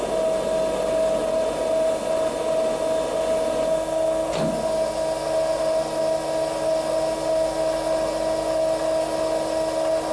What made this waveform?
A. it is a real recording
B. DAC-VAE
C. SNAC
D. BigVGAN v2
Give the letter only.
A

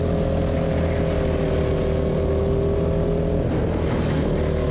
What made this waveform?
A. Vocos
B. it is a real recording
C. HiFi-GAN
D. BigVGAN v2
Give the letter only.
B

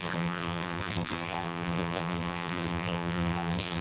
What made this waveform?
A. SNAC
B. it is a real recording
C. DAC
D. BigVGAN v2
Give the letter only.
D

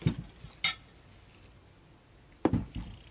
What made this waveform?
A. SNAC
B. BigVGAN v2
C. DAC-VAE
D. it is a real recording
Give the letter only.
D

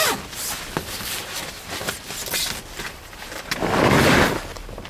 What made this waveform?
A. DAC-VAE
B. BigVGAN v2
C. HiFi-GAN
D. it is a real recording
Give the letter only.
D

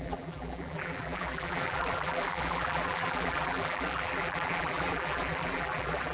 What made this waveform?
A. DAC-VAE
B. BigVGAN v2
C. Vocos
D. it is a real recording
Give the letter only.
B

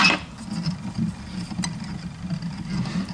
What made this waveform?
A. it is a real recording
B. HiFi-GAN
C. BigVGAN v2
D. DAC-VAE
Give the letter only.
C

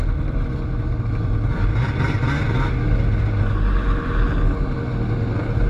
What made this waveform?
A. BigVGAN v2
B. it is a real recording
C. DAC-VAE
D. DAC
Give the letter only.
B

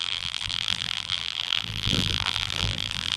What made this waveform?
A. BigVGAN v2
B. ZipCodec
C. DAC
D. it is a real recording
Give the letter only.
A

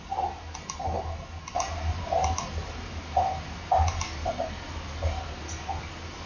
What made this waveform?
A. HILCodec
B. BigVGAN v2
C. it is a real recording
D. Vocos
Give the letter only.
C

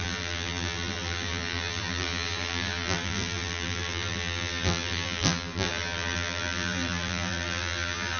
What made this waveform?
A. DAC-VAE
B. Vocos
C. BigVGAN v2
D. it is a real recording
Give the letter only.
C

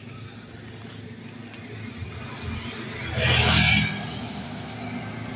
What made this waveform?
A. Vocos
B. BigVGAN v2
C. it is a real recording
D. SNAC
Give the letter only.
C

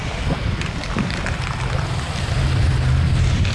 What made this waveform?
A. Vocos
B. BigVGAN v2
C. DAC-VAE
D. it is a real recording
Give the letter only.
D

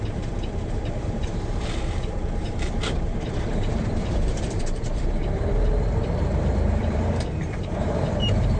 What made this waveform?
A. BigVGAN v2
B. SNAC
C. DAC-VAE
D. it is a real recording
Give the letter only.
A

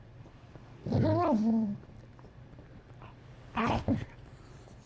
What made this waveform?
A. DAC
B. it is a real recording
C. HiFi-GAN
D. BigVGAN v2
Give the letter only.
D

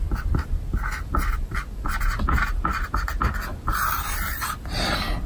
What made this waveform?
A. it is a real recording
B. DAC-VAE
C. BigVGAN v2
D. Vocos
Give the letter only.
A